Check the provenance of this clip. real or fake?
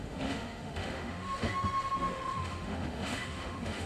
fake